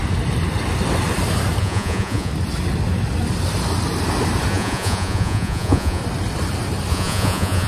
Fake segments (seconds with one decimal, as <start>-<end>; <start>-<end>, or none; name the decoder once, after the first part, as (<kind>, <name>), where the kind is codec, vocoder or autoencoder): 1.6-2.3 (vocoder, Vocos); 4.5-6.0; 6.9-7.7